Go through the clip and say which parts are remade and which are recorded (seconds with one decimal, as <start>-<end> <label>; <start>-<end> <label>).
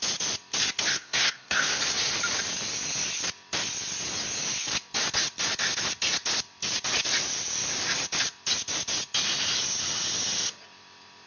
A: 0.0-0.9 recorded; 0.9-1.8 remade; 1.8-11.3 recorded